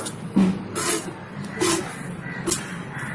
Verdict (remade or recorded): recorded